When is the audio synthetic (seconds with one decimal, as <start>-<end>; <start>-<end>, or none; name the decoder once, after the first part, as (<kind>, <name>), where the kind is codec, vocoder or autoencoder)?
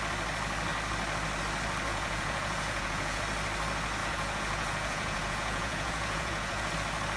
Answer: 1.9-3.2 (vocoder, Vocos); 4.0-6.7